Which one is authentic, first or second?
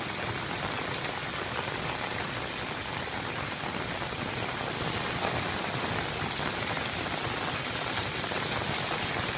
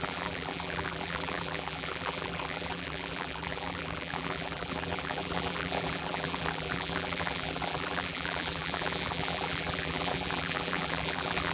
first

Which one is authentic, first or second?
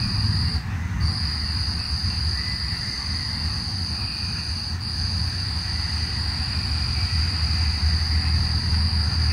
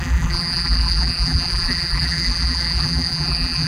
first